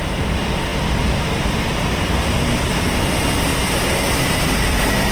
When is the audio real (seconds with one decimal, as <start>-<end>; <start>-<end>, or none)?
0.0-5.1